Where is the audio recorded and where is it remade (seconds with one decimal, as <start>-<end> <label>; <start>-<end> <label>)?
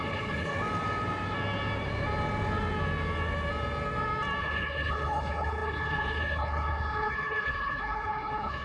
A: 0.0-0.5 remade; 0.5-4.4 recorded; 4.4-8.6 remade